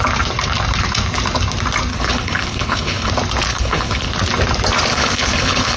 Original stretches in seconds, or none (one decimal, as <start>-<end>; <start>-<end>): 0.0-1.9; 3.1-3.5; 4.1-4.9